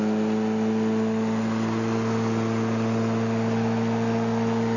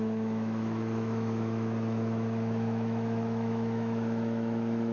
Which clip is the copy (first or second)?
second